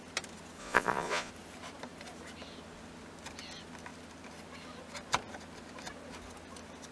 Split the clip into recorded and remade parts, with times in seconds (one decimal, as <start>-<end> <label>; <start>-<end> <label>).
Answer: 0.0-0.6 recorded; 0.6-1.3 remade; 1.3-6.9 recorded